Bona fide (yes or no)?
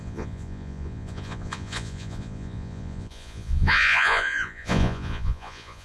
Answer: no